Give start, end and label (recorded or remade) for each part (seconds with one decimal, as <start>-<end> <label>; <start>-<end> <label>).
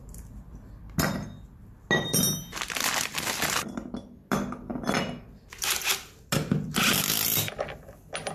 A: 0.0-4.7 recorded; 4.7-5.4 remade; 5.4-8.3 recorded